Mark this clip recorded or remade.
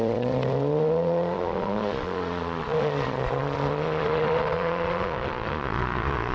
remade